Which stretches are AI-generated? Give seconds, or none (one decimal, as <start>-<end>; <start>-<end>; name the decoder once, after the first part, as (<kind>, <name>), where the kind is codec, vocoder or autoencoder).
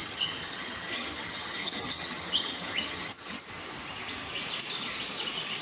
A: 0.0-3.4 (vocoder, HiFi-GAN)